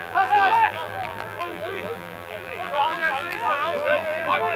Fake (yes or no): yes